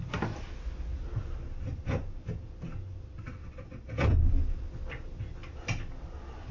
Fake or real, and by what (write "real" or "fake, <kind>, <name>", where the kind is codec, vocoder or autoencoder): real